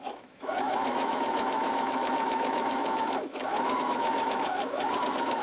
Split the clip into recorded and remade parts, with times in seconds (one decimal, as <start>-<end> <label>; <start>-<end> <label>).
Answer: 0.0-5.4 remade